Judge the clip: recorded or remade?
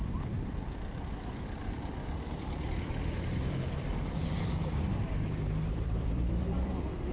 remade